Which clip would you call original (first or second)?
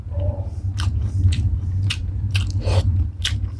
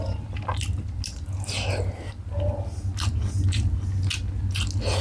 second